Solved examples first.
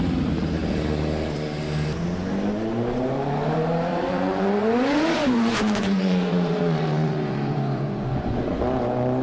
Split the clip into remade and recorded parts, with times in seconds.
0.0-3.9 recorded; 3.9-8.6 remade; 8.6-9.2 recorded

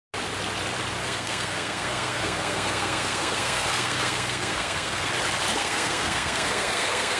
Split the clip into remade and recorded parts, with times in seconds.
0.0-1.0 recorded; 1.0-5.1 remade; 5.1-5.5 recorded; 5.5-7.2 remade

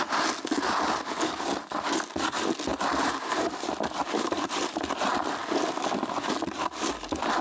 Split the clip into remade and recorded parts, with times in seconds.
0.0-2.7 recorded; 2.7-4.8 remade; 4.8-7.4 recorded

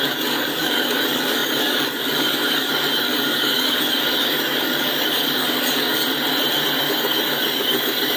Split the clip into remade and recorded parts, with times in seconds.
0.0-6.0 remade; 6.0-6.8 recorded; 6.8-8.2 remade

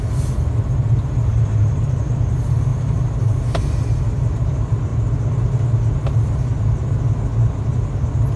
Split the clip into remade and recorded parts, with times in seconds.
0.0-1.3 recorded; 1.3-2.3 remade; 2.3-2.7 recorded; 2.7-4.4 remade; 4.4-8.4 recorded

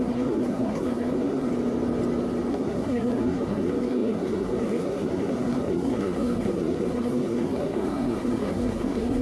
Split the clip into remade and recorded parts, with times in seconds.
0.0-1.5 remade; 1.5-2.5 recorded; 2.5-9.2 remade

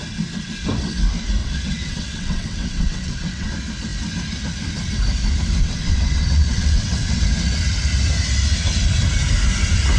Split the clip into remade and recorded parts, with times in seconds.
0.0-1.4 recorded; 1.4-3.5 remade; 3.5-5.6 recorded; 5.6-7.2 remade; 7.2-10.0 recorded